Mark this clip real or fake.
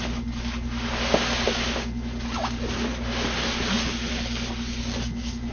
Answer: real